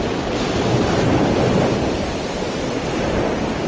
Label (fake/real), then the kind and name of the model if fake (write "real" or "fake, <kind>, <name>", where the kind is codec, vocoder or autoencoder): real